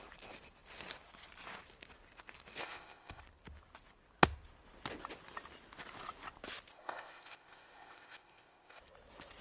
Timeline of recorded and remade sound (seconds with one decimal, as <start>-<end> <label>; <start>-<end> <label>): 0.0-2.6 recorded; 2.6-3.2 remade; 3.2-6.7 recorded; 6.7-8.8 remade; 8.8-9.4 recorded